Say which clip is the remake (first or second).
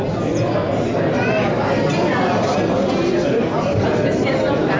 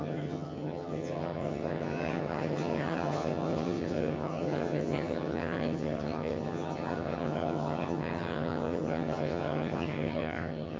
second